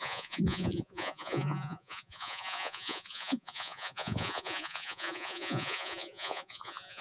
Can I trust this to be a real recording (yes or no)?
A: no